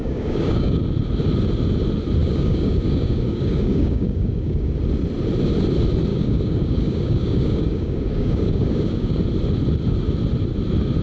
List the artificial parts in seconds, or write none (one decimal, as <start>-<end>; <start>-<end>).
0.0-0.8; 2.2-4.7; 6.1-9.2